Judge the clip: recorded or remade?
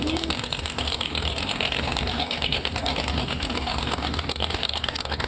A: remade